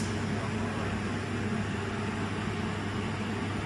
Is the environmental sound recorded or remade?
recorded